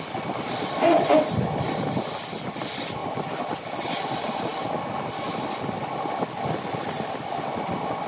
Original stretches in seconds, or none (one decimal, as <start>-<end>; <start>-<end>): 0.0-8.1